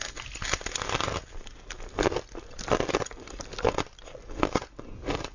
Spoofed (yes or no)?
no